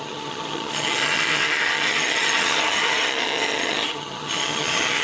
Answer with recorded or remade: remade